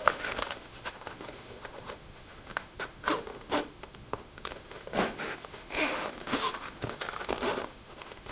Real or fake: fake